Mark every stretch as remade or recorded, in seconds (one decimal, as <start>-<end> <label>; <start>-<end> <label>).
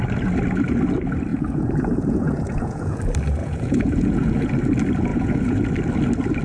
0.0-1.3 recorded; 1.3-3.0 remade; 3.0-3.4 recorded; 3.4-4.5 remade; 4.5-5.1 recorded; 5.1-5.7 remade; 5.7-6.4 recorded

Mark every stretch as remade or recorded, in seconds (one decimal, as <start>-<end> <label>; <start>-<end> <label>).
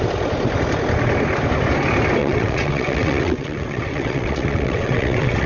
0.0-2.2 recorded; 2.2-5.5 remade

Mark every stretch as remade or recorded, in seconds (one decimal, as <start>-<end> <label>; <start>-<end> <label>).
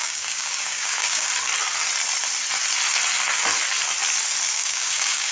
0.0-1.3 remade; 1.3-4.5 recorded; 4.5-5.3 remade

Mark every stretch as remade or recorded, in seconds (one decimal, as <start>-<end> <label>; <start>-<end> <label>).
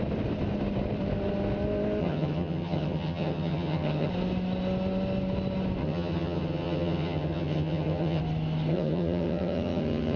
0.0-2.0 recorded; 2.0-4.1 remade; 4.1-5.8 recorded; 5.8-8.2 remade; 8.2-8.7 recorded; 8.7-10.2 remade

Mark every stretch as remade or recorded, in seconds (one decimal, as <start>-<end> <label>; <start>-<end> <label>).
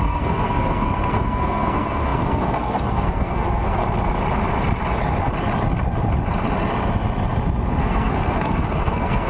0.0-3.8 remade; 3.8-7.8 recorded; 7.8-9.3 remade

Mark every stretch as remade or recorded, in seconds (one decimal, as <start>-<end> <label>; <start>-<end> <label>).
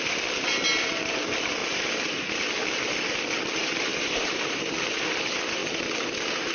0.0-0.7 recorded; 0.7-1.2 remade; 1.2-3.9 recorded; 3.9-4.6 remade; 4.6-6.5 recorded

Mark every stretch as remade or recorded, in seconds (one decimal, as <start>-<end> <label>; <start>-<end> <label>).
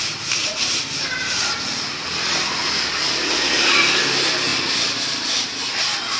0.0-6.2 recorded